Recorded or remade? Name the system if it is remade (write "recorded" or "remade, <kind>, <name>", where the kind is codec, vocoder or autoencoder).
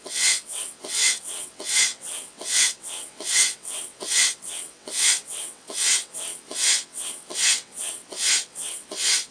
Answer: remade, vocoder, WaveNeXt